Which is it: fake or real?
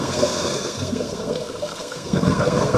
fake